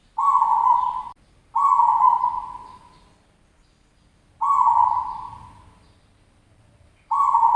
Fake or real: real